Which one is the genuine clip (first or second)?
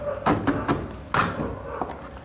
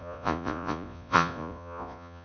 first